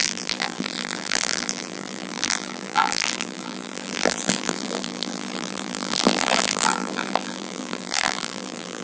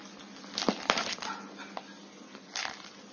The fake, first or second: first